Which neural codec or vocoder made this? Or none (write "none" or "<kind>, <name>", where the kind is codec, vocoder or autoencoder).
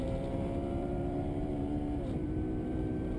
vocoder, BigVGAN v2